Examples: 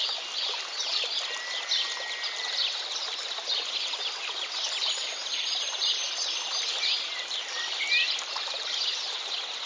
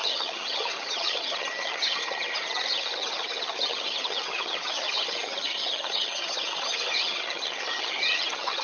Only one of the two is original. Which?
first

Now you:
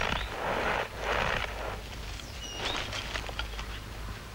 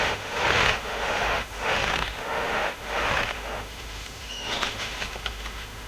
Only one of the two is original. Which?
first